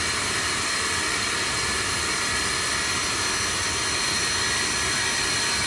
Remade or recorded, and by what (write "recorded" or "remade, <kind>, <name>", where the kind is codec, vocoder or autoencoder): remade, vocoder, BigVGAN v2